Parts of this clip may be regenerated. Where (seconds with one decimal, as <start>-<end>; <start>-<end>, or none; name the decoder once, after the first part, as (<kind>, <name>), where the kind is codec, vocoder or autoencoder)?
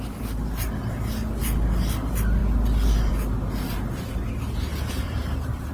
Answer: 4.7-5.7 (vocoder, BigVGAN v2)